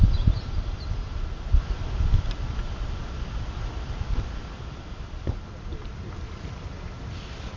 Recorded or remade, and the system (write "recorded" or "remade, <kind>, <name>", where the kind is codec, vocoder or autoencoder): recorded